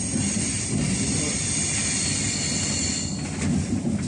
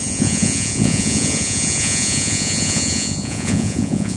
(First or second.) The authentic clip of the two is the first